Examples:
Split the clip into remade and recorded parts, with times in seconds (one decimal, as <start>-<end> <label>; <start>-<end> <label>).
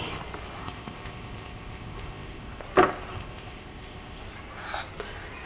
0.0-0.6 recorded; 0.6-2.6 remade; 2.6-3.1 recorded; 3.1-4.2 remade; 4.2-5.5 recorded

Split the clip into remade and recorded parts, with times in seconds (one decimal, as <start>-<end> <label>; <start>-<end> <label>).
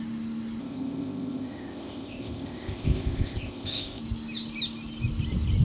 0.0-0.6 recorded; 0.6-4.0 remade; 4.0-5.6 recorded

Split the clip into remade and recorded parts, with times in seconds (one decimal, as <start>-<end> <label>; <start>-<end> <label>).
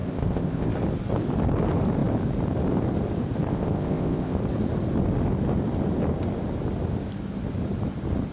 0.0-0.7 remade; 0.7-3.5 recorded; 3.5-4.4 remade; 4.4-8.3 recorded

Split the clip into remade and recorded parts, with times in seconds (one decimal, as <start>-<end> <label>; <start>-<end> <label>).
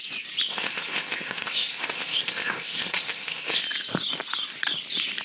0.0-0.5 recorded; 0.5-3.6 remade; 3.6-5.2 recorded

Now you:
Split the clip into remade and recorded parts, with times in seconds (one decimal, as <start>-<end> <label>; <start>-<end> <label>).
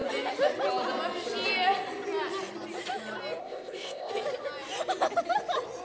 0.0-3.4 recorded; 3.4-4.1 remade; 4.1-5.8 recorded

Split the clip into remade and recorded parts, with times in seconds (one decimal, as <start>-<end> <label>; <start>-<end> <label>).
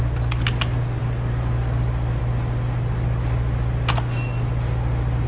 0.0-5.3 recorded